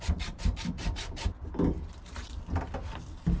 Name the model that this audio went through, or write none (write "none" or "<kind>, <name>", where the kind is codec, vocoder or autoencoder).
none